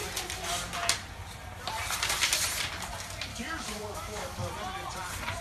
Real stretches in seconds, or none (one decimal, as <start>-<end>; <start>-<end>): 0.0-3.3; 4.5-5.4